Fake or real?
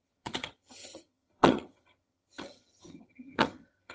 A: fake